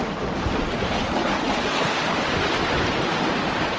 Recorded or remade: recorded